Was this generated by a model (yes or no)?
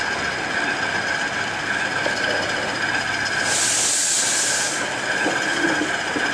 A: no